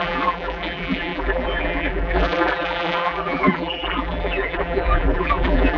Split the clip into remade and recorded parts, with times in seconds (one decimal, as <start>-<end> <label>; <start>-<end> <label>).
0.0-5.8 remade